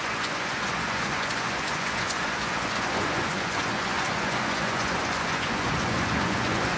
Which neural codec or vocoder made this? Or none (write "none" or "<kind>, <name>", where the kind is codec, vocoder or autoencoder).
vocoder, Vocos